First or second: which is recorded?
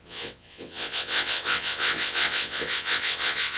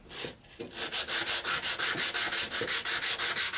second